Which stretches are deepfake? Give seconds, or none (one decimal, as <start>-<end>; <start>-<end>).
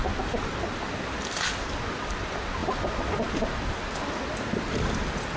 none